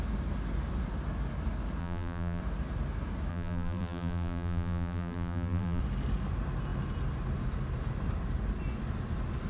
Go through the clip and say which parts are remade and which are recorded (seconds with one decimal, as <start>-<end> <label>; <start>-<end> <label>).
0.0-1.8 recorded; 1.8-2.4 remade; 2.4-3.3 recorded; 3.3-5.8 remade; 5.8-9.5 recorded